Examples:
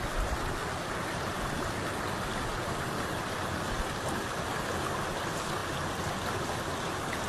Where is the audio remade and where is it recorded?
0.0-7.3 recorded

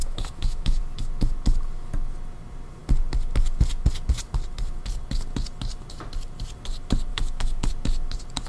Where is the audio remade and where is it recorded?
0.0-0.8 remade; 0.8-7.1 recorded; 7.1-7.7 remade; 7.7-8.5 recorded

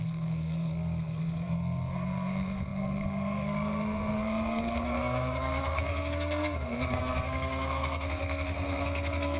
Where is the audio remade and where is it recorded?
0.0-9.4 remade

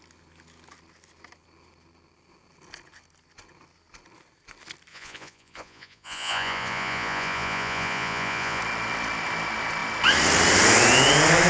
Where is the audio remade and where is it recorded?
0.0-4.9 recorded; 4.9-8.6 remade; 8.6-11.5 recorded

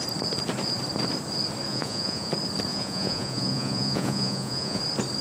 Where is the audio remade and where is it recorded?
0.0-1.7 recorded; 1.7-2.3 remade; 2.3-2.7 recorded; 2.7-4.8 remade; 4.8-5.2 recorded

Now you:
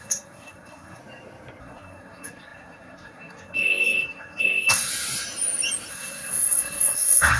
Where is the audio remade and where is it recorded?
0.0-1.0 remade; 1.0-1.6 recorded; 1.6-4.9 remade; 4.9-5.9 recorded; 5.9-7.4 remade